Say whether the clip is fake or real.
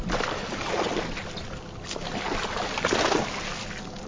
real